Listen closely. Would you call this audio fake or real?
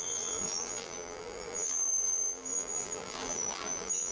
fake